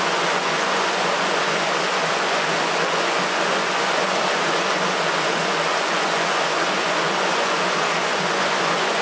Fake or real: fake